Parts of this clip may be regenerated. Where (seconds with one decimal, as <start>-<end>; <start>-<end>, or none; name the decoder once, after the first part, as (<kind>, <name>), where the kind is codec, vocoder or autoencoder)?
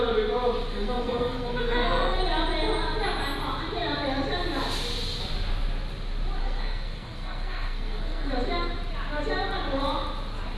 0.7-2.2 (codec, SNAC); 6.4-8.3